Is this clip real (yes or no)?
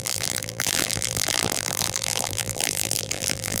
no